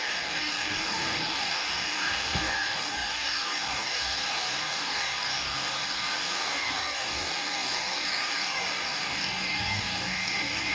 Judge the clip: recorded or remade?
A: remade